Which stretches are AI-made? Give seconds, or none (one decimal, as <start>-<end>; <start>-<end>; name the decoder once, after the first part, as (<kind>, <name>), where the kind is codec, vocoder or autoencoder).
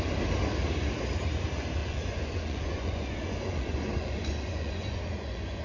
1.8-5.6 (vocoder, Vocos)